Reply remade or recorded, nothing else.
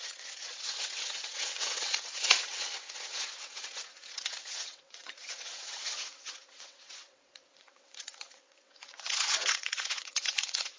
remade